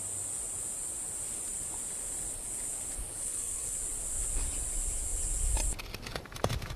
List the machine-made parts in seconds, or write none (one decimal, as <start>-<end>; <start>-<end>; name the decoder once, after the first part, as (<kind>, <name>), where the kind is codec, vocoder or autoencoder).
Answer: 3.2-3.8 (codec, SNAC)